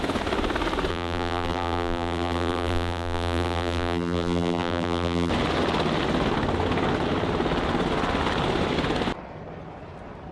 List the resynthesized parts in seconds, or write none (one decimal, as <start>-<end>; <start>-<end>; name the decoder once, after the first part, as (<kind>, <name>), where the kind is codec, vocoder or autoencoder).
0.9-5.3 (vocoder, BigVGAN v2)